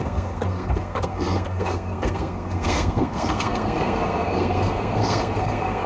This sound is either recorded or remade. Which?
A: remade